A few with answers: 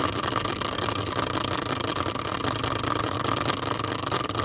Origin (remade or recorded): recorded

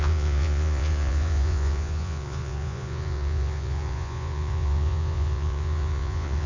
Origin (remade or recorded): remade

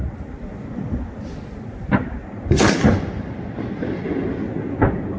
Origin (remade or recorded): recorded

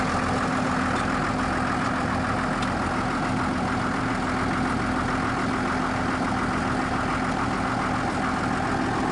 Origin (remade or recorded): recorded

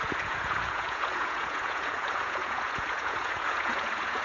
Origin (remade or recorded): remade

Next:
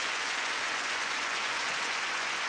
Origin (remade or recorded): remade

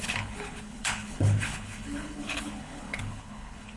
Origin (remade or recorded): remade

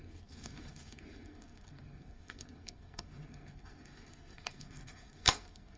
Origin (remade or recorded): remade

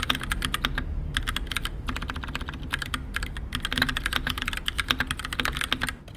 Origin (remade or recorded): recorded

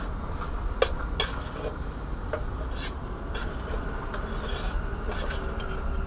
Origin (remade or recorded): recorded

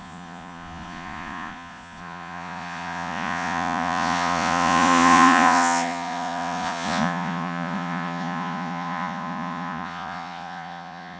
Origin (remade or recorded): remade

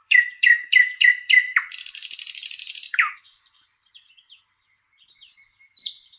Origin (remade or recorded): remade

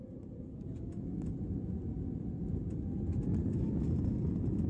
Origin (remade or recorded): recorded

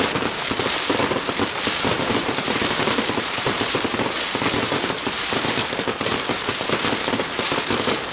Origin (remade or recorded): remade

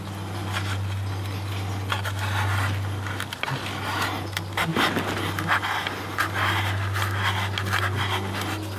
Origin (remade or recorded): recorded